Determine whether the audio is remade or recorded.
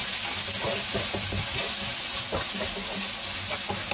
recorded